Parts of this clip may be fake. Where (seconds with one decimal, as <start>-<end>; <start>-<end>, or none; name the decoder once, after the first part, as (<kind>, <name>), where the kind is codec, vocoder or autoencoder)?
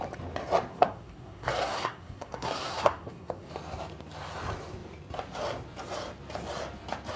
0.7-3.5 (codec, SNAC)